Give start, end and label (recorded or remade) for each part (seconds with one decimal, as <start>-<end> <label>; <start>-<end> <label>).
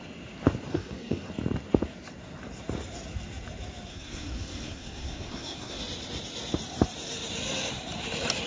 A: 0.0-0.7 recorded; 0.7-1.3 remade; 1.3-3.9 recorded; 3.9-5.8 remade; 5.8-8.5 recorded